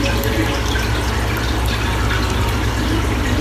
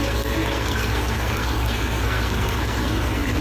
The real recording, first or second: first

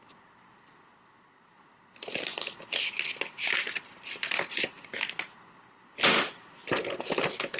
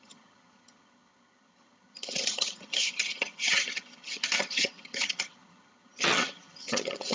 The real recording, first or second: first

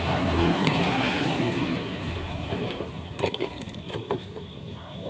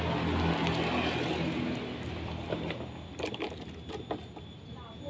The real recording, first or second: second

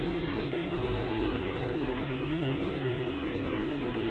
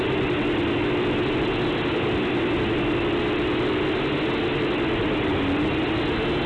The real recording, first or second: second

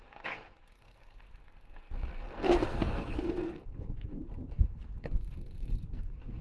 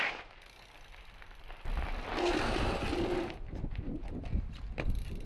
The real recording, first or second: second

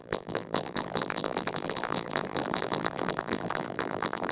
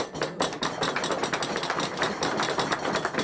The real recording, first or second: second